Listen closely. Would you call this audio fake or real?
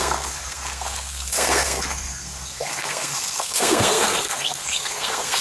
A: fake